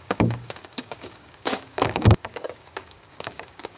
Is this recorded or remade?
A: remade